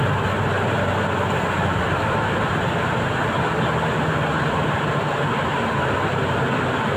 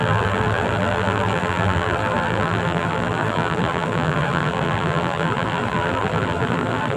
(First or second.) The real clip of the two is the first